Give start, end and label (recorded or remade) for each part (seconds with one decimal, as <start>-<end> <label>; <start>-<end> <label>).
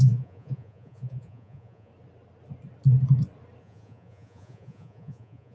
0.0-1.9 remade; 1.9-3.6 recorded; 3.6-5.5 remade